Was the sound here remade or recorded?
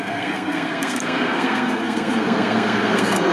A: remade